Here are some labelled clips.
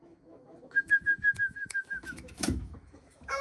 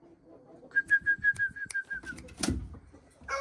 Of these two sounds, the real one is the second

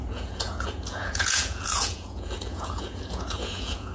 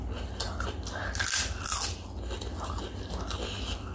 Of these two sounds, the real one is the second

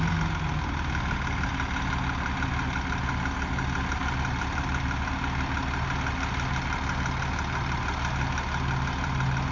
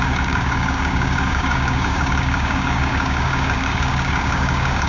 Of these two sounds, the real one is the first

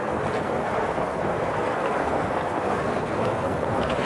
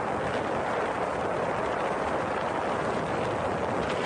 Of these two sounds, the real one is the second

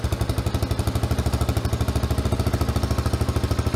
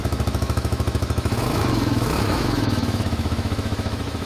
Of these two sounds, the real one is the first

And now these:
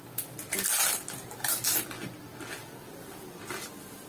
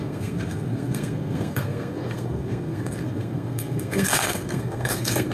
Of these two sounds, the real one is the first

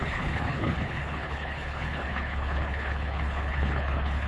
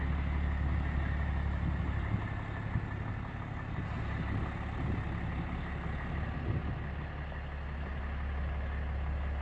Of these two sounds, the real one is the second